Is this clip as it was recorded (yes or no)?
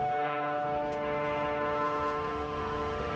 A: no